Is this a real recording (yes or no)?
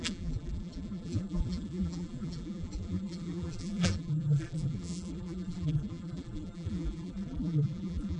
no